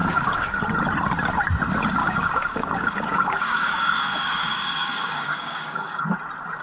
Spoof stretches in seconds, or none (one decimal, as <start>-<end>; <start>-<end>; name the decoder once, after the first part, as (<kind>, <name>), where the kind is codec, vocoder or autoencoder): 0.0-0.6 (codec, DAC); 2.0-6.0